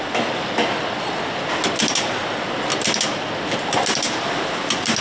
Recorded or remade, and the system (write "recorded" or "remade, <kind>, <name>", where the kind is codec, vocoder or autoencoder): recorded